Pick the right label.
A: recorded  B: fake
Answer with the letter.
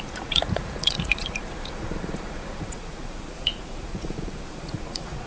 B